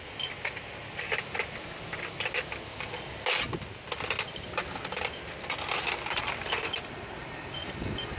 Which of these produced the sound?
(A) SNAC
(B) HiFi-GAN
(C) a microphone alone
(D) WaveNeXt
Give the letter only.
C